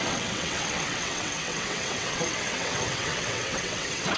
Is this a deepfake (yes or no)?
yes